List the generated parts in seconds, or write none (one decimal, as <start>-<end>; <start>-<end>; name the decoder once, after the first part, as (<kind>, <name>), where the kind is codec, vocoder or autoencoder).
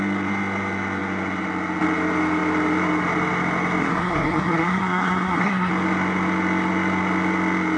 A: 3.8-5.7 (codec, SNAC)